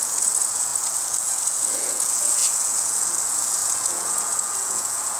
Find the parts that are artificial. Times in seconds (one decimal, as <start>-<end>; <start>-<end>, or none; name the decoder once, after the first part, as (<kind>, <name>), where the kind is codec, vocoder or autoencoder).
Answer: 0.0-5.2 (vocoder, Vocos)